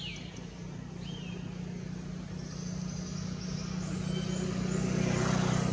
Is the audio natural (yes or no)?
yes